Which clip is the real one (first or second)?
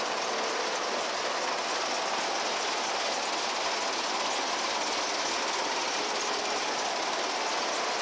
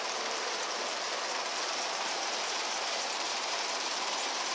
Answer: first